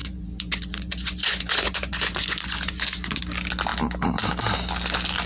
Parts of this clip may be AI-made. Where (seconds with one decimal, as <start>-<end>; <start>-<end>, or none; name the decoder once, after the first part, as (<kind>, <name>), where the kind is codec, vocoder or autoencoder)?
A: 0.0-3.2 (vocoder, Vocos)